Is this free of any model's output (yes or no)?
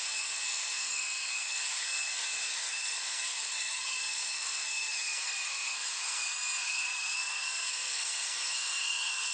no